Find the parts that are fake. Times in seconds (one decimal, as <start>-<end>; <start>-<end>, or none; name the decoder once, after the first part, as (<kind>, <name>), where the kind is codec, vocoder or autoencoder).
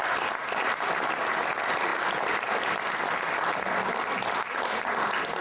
1.9-5.0 (vocoder, BigVGAN v2)